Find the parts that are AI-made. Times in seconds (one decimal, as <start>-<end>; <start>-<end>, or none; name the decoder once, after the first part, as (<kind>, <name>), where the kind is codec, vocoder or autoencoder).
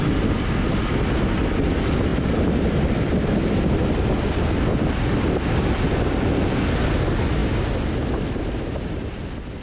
2.1-3.9 (vocoder, BigVGAN v2); 4.7-5.9